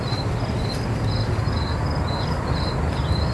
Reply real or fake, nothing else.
real